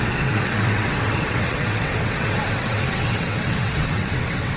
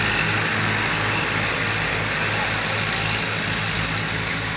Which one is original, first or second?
second